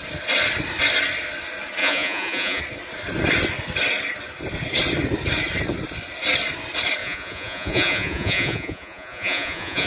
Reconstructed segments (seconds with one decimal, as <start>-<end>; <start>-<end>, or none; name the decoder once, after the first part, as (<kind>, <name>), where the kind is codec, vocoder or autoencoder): 1.8-2.6 (vocoder, Vocos); 7.0-9.9